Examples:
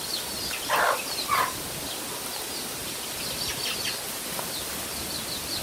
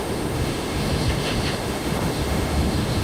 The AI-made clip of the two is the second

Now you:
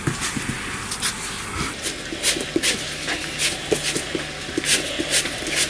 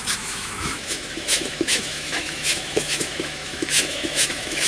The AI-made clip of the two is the second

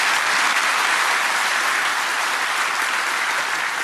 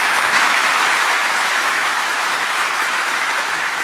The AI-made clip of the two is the second